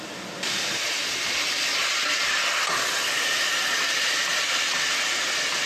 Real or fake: real